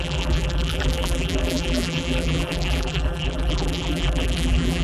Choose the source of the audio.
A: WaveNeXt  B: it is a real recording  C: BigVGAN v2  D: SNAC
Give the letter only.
C